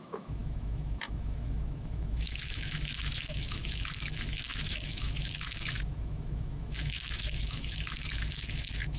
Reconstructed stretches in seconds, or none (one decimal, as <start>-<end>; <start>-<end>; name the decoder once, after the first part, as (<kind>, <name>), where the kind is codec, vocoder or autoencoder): 0.0-9.0 (autoencoder, DAC-VAE)